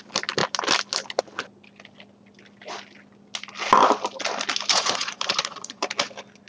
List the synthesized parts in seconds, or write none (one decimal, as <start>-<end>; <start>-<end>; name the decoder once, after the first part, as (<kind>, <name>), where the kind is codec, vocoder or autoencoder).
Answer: 4.7-5.9 (vocoder, Vocos)